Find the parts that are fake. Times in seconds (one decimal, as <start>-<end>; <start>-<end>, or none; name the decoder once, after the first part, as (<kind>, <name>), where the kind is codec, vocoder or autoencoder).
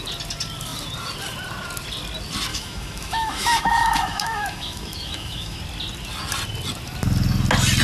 2.5-5.6 (autoencoder, DAC-VAE)